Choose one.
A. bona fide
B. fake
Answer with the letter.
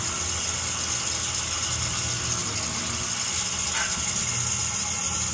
A